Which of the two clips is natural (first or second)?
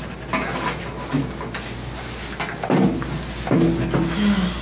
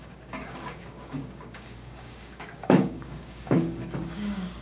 first